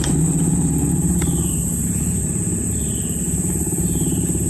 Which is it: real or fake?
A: fake